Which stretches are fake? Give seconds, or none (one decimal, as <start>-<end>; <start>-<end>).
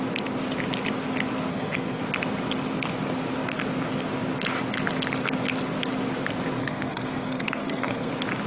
1.5-2.0; 6.6-8.1